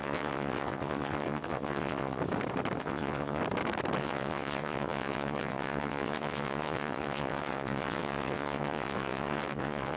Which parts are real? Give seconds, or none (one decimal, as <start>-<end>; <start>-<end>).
2.2-2.8; 3.4-4.0